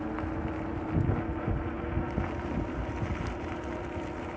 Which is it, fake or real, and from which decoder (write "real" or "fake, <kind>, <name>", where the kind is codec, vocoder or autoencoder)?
real